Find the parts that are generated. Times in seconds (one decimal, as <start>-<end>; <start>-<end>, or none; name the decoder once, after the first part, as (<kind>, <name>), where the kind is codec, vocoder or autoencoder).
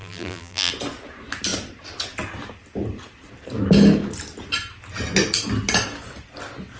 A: 0.0-0.7 (vocoder, BigVGAN v2)